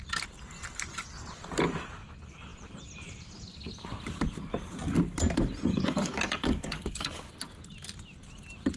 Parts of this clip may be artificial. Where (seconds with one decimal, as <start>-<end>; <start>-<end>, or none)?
5.7-7.3